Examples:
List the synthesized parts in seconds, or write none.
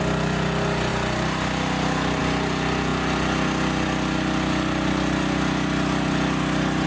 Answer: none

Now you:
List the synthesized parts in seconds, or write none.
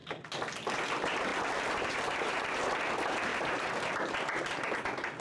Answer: 1.3-2.6 (vocoder, BigVGAN v2); 3.3-4.0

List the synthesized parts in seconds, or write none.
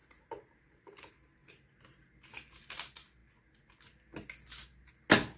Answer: 0.0-2.6 (vocoder, BigVGAN v2)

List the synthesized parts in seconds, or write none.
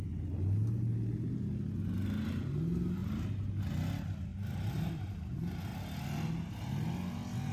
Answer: 4.3-5.1 (vocoder, BigVGAN v2)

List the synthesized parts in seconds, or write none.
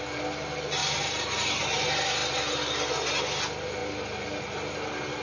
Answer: none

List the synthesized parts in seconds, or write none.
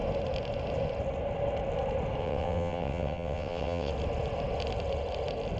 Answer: 2.2-3.9 (vocoder, WaveNeXt)